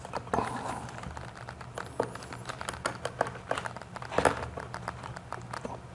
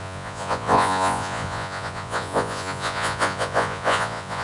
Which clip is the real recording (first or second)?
first